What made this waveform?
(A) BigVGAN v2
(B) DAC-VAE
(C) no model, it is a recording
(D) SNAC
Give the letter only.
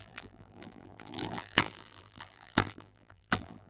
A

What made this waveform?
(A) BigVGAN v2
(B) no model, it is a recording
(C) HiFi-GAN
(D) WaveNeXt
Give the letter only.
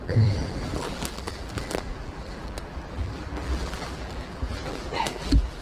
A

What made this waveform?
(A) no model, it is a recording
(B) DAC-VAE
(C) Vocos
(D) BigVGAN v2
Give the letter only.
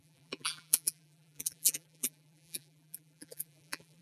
D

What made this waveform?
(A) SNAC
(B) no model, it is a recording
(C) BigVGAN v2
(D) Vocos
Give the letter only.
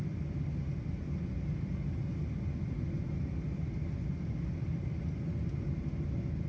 B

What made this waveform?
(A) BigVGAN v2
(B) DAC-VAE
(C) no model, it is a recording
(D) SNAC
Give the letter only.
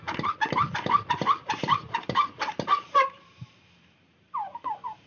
A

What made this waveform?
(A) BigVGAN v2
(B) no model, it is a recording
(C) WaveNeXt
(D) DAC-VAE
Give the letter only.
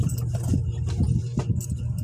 B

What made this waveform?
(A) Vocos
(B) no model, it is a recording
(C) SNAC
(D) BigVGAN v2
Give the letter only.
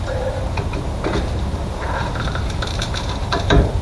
D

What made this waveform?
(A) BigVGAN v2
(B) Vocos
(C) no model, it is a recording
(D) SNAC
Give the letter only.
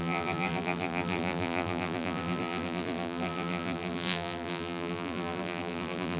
A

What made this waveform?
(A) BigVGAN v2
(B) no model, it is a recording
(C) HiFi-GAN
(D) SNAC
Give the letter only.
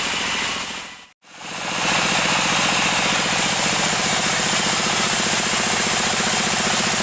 B